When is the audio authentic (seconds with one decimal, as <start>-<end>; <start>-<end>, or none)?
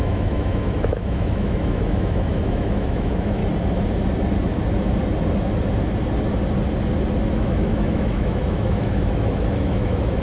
3.4-7.3